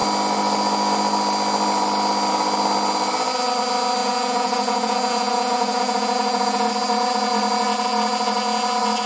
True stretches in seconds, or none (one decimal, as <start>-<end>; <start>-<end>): 0.0-4.0; 6.7-9.1